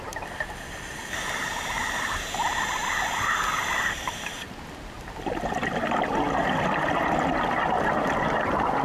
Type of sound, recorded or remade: recorded